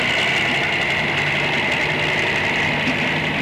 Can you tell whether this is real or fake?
real